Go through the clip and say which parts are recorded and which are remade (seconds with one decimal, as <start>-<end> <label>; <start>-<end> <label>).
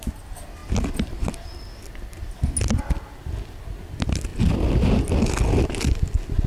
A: 0.0-6.5 recorded